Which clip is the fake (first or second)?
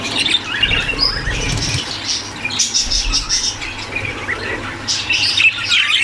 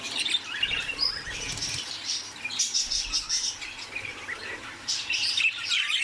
second